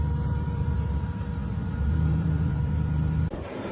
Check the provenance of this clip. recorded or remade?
remade